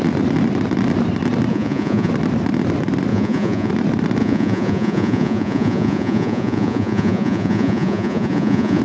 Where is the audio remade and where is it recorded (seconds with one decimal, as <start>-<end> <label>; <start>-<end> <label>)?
0.0-1.5 recorded; 1.5-2.1 remade; 2.1-3.1 recorded; 3.1-3.7 remade; 3.7-4.2 recorded; 4.2-8.8 remade